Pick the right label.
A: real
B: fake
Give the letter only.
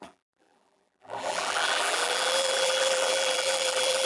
B